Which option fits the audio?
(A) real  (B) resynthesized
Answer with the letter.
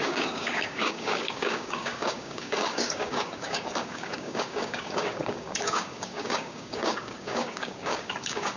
B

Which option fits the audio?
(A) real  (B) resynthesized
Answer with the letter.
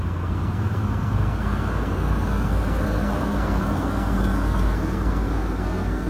B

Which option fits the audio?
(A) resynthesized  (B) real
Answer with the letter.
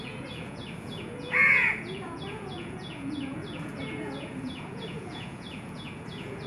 A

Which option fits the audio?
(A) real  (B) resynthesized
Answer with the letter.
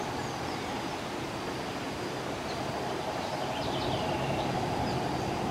A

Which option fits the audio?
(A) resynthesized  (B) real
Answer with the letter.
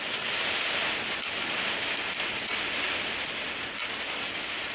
B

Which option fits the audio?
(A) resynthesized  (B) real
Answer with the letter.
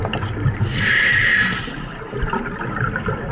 B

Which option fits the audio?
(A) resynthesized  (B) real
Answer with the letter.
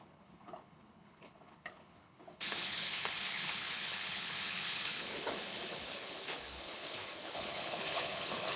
A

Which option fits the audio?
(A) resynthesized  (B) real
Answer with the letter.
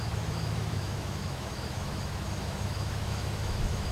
A